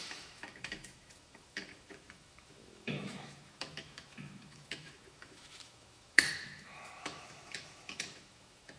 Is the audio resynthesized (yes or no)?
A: yes